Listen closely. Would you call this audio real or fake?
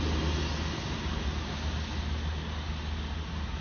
real